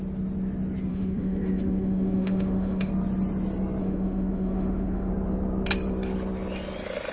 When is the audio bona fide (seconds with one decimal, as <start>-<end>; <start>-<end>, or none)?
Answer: 0.0-0.9; 2.9-3.8; 5.1-7.1